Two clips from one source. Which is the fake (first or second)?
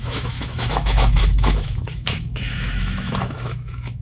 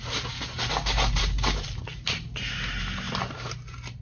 first